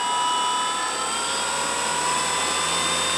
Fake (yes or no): no